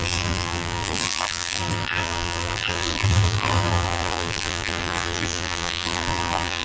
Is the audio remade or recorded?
remade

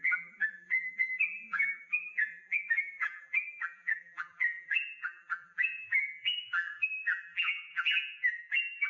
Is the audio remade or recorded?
remade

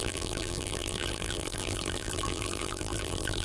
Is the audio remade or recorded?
remade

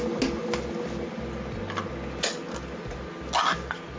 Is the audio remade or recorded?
recorded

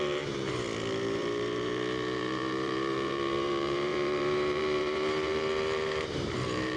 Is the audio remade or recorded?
remade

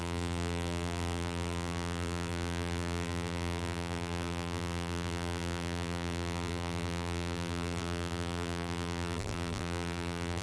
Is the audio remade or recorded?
remade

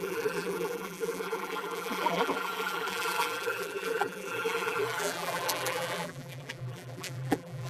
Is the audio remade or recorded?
remade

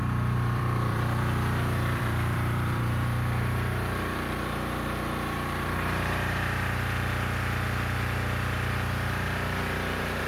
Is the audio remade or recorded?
remade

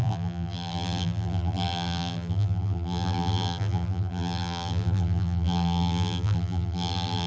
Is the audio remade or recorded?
remade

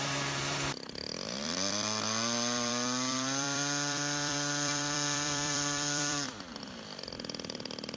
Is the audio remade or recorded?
remade